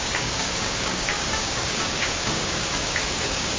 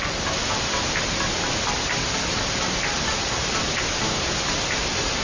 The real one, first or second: second